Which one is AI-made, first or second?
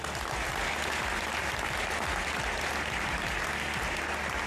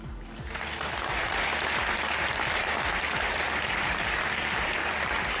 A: second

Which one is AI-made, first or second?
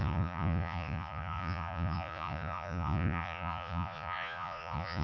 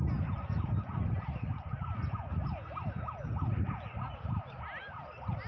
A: first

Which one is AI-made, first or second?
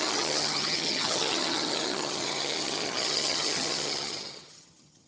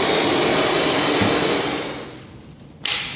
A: first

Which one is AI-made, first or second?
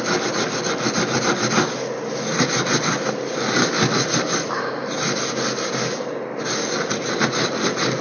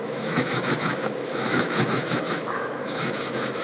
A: second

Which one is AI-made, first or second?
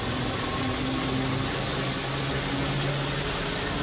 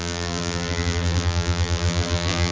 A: second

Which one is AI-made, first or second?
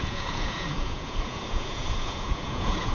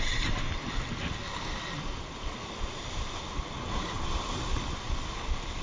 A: first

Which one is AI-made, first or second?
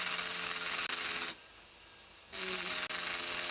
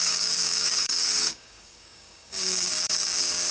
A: second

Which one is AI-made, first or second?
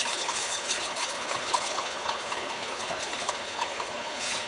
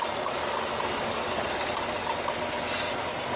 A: first